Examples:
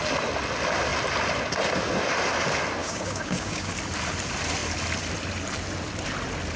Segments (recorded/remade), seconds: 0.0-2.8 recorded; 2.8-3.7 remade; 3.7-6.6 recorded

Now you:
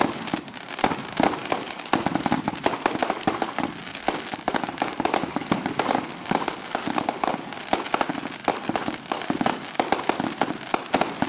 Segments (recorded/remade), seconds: 0.0-1.4 recorded; 1.4-1.9 remade; 1.9-3.0 recorded; 3.0-7.3 remade; 7.3-8.4 recorded; 8.4-9.7 remade; 9.7-11.3 recorded

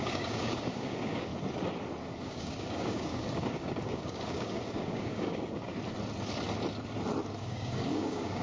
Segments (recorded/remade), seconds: 0.0-1.3 remade; 1.3-2.2 recorded; 2.2-5.7 remade; 5.7-7.4 recorded; 7.4-8.4 remade

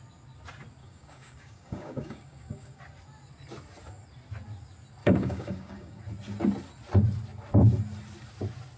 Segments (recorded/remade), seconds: 0.0-0.8 recorded; 0.8-2.8 remade; 2.8-5.0 recorded; 5.0-6.0 remade; 6.0-8.8 recorded

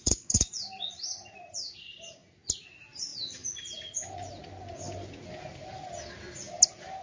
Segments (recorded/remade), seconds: 0.0-0.5 remade; 0.5-7.0 recorded

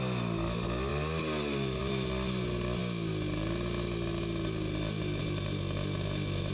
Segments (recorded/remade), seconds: 0.0-6.5 recorded

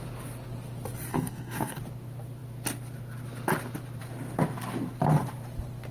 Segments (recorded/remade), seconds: 0.0-1.1 recorded; 1.1-1.8 remade; 1.8-5.9 recorded

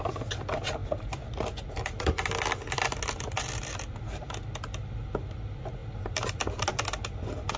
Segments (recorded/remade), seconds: 0.0-7.6 recorded